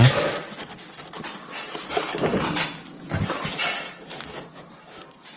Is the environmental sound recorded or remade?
recorded